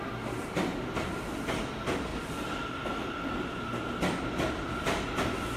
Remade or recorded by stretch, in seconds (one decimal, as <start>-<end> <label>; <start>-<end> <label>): 0.0-5.6 recorded